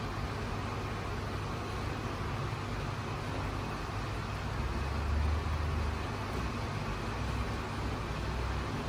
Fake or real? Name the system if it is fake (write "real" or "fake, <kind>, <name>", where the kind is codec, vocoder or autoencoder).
real